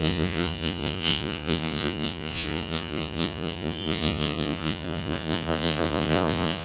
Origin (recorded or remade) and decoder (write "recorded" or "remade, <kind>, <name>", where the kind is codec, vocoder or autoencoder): remade, vocoder, Vocos